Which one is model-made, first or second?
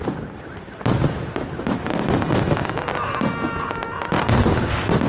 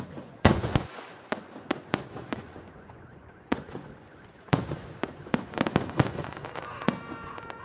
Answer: second